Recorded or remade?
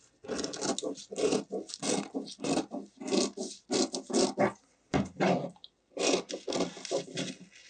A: recorded